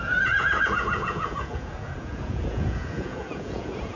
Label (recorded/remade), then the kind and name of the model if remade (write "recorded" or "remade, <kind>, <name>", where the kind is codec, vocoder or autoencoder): remade, vocoder, Vocos